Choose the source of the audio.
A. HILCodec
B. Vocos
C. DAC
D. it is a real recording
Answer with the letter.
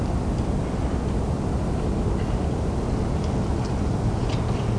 D